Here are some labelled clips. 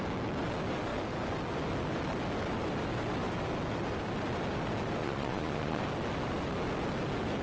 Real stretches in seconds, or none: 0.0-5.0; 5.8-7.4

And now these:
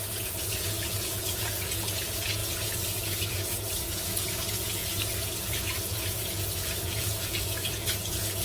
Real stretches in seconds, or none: none

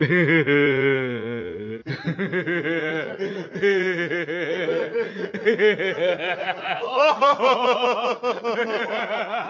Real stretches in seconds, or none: 1.8-2.8

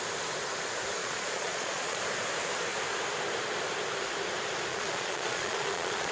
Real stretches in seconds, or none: 0.0-1.0; 2.0-4.7

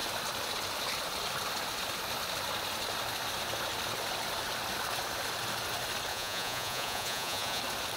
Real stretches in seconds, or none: 0.0-6.1; 7.6-8.0